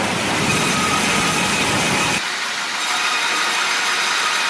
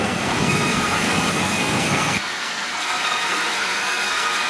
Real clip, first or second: first